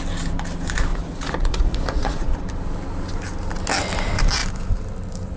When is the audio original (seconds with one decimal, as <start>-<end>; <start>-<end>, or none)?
0.0-0.9; 2.4-5.4

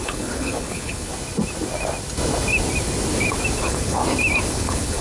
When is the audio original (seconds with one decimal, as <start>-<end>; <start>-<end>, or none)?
1.1-3.6; 4.0-4.5